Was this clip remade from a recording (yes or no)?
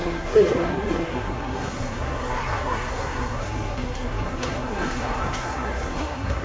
yes